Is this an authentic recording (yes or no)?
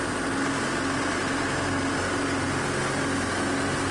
yes